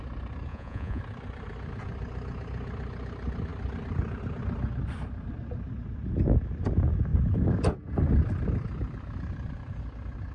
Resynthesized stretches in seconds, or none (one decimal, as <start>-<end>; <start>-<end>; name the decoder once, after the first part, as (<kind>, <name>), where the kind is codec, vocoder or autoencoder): 0.5-1.0 (vocoder, Vocos)